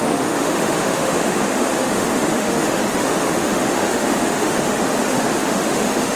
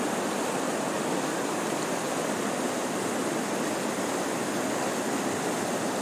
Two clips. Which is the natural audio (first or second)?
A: second